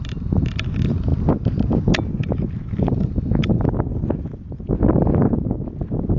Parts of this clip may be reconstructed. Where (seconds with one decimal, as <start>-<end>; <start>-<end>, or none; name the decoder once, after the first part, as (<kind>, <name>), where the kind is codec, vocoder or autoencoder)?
none